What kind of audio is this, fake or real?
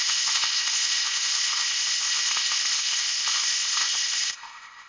fake